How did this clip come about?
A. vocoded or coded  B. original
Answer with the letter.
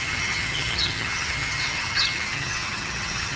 A